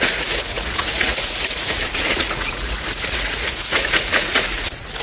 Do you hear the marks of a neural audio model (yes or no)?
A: yes